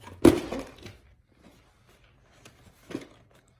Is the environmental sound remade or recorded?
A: recorded